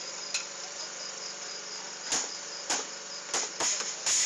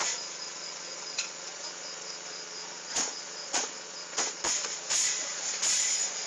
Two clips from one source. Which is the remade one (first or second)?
second